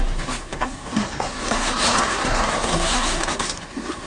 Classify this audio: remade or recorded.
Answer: remade